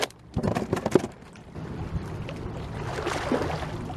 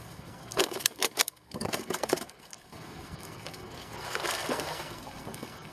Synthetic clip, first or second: second